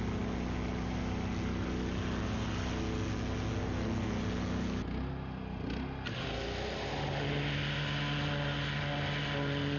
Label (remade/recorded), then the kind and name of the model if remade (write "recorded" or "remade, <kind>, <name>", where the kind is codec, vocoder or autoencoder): recorded